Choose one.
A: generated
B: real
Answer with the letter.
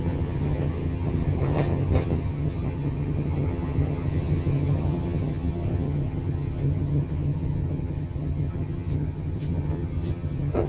A